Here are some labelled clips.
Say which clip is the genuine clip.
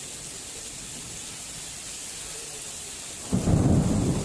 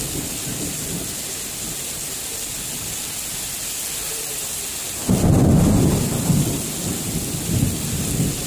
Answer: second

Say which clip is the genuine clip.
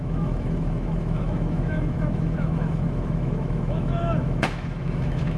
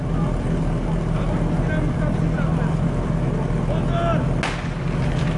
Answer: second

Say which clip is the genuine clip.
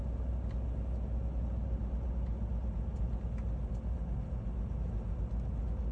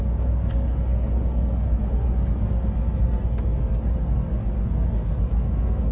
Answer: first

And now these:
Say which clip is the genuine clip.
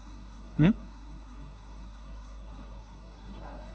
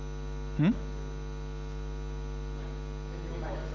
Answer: second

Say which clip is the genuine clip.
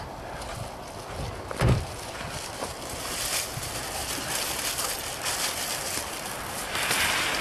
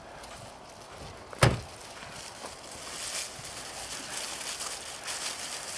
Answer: second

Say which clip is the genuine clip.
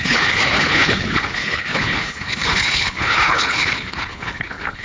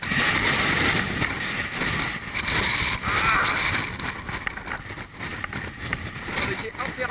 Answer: second